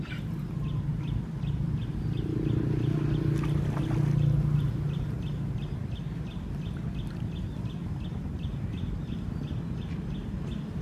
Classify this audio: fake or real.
real